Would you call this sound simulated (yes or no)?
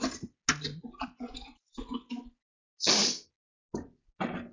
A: no